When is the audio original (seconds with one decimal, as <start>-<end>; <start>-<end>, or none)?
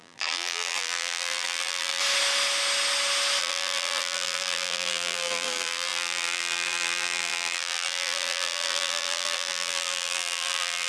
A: 2.0-3.4